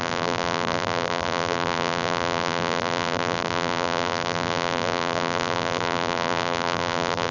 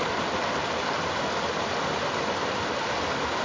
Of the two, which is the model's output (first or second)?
first